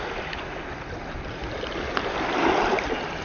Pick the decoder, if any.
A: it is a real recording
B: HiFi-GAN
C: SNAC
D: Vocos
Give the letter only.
A